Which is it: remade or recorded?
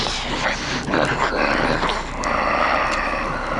recorded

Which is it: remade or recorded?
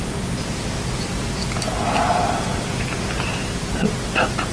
recorded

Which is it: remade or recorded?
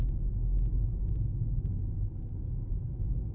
recorded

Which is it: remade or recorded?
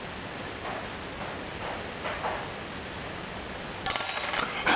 recorded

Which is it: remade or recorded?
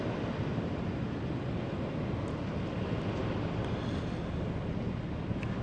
recorded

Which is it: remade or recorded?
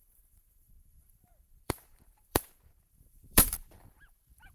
remade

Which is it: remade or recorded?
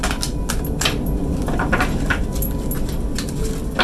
recorded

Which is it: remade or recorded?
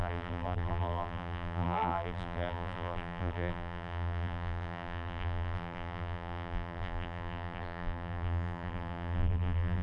remade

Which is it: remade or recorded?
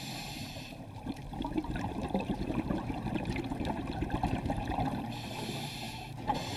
remade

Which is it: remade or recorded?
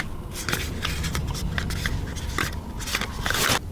recorded